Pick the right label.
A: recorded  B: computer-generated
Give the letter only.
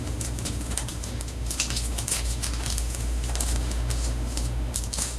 B